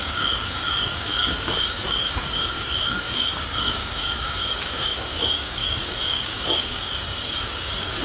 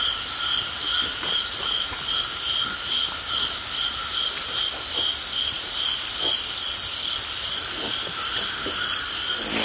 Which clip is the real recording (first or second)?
second